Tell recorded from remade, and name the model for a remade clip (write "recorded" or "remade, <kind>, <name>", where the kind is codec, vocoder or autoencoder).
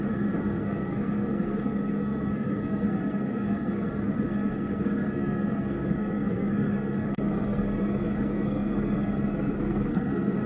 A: remade, codec, SNAC